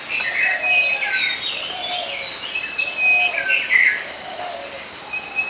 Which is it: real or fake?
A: real